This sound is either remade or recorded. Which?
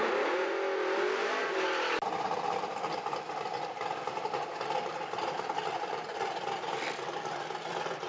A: recorded